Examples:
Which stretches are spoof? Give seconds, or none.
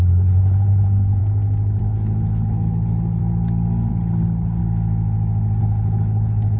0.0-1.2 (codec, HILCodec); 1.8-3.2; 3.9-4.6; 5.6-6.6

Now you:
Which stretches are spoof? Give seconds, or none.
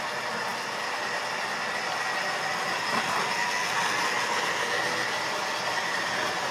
none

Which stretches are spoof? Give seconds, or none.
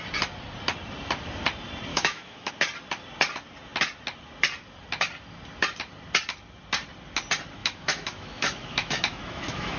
1.9-2.5 (autoencoder, DAC-VAE); 7.6-9.8